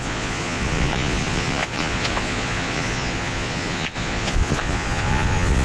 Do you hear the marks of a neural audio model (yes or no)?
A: yes